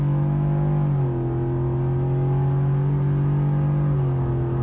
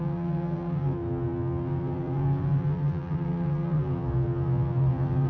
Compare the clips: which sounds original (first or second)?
first